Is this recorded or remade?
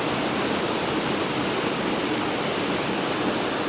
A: recorded